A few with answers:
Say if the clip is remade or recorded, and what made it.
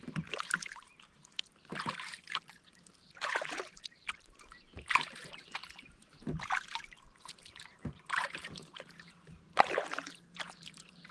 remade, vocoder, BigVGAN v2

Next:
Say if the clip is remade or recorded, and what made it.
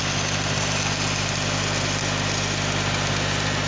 recorded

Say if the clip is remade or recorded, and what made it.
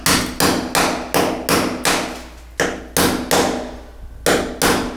recorded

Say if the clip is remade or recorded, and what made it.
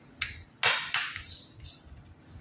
recorded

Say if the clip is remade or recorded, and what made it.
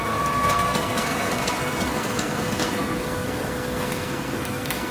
remade, codec, SNAC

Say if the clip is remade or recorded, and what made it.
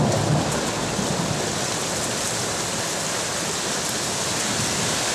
recorded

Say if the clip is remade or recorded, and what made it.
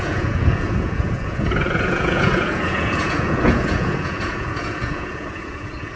remade, vocoder, Vocos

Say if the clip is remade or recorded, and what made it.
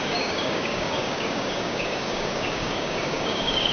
remade, codec, DAC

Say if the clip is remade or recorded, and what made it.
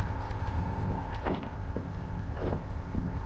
remade, codec, ZipCodec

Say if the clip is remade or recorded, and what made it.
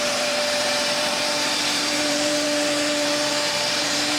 remade, vocoder, BigVGAN v2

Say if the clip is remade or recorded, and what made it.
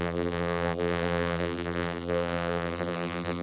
remade, vocoder, BigVGAN v2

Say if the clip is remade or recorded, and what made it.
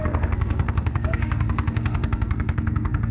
remade, codec, SNAC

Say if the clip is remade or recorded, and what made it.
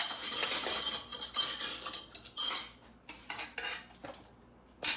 recorded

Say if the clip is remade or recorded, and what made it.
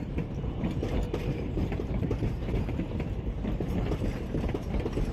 remade, vocoder, BigVGAN v2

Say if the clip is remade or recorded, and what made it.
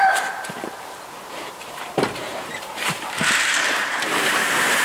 remade, vocoder, BigVGAN v2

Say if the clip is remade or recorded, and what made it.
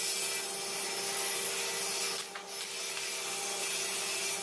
recorded